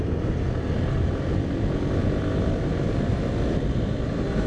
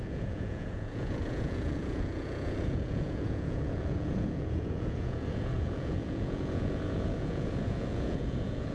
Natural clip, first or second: first